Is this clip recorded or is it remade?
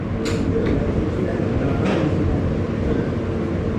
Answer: recorded